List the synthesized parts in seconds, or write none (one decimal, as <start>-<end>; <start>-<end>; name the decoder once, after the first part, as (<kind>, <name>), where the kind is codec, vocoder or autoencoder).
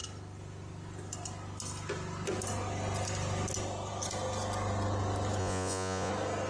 5.4-6.1 (vocoder, Vocos)